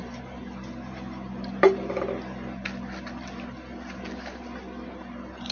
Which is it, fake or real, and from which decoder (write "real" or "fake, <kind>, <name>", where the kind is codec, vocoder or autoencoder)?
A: real